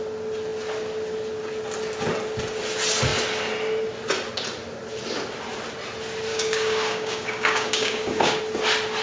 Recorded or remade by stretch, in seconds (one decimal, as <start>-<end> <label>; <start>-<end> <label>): 0.0-6.3 recorded; 6.3-8.4 remade; 8.4-9.0 recorded